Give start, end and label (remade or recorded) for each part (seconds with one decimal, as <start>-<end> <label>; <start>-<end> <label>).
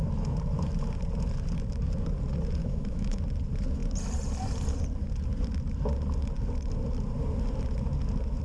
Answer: 0.0-2.6 recorded; 2.6-3.2 remade; 3.2-8.4 recorded